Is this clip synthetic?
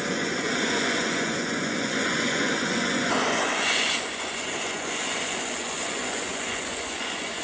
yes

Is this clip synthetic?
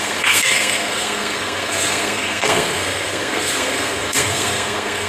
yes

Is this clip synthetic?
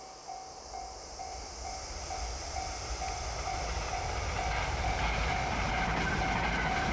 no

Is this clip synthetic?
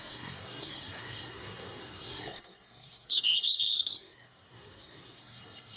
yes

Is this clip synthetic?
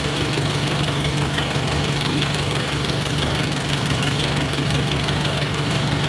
yes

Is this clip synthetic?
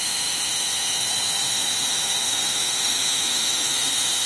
yes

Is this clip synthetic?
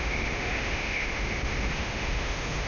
yes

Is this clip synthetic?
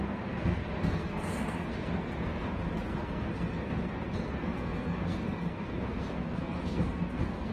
yes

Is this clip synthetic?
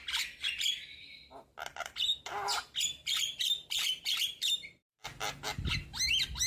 no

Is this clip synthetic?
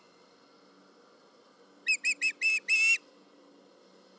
no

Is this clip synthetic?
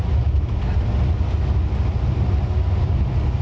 no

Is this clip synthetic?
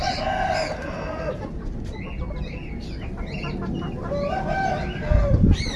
no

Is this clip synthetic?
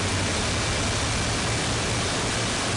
no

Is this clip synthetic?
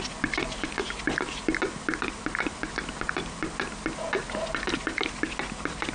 no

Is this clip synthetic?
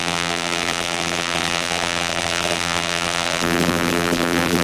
yes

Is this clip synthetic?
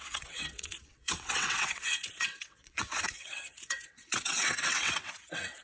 yes